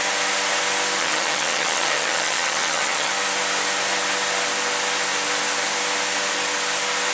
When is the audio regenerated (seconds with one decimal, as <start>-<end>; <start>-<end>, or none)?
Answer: 1.0-3.1